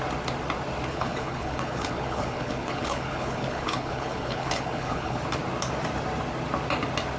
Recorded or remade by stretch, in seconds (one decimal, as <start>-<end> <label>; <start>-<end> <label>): 0.0-0.9 recorded; 0.9-5.2 remade; 5.2-7.2 recorded